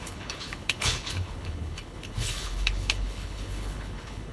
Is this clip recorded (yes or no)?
no